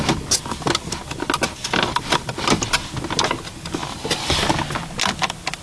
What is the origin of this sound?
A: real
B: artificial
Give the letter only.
A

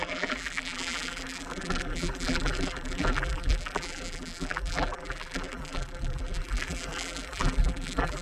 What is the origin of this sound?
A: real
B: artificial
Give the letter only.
B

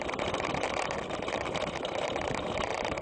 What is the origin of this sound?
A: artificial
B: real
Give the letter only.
A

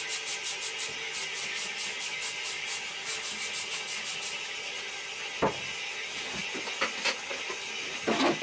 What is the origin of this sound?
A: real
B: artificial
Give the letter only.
A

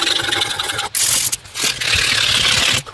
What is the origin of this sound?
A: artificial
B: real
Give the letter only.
B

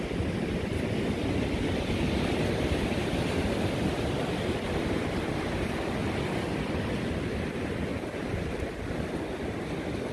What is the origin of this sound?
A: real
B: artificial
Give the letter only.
A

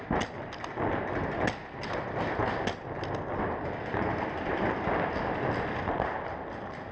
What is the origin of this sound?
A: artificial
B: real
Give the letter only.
B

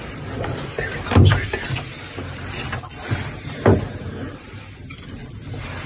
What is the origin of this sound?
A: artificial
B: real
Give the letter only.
A